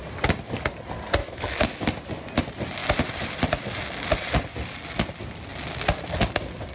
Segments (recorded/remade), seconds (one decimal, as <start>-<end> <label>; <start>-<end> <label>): 0.0-1.2 recorded; 1.2-1.8 remade; 1.8-6.7 recorded